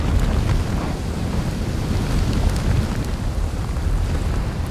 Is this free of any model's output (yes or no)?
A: yes